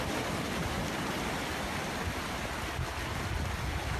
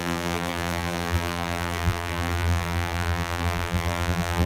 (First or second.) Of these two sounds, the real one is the first